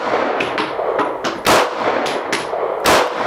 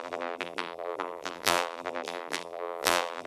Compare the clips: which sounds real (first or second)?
first